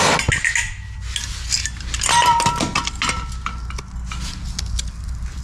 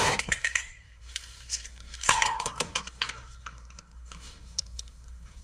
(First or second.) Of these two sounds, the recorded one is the first